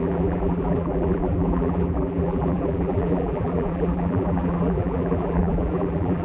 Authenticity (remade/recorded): remade